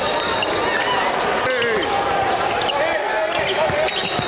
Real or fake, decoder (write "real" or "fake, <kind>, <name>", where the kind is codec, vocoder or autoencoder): real